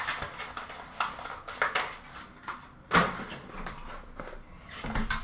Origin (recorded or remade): recorded